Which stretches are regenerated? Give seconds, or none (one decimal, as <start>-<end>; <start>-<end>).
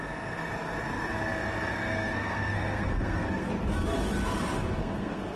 1.9-3.5; 4.8-5.4